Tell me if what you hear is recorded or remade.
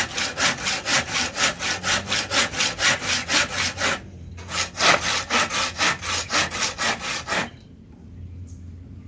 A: recorded